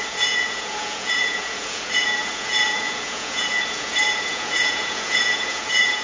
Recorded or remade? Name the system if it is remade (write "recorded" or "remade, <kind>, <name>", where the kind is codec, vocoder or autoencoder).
remade, vocoder, Vocos